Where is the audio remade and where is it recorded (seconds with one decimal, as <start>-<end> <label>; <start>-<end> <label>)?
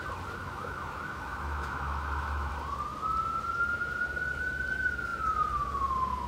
0.0-0.4 recorded; 0.4-2.5 remade; 2.5-6.3 recorded